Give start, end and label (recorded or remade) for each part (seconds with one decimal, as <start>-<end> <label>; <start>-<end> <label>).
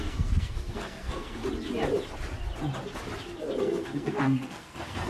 0.0-1.4 remade; 1.4-3.6 recorded; 3.6-5.1 remade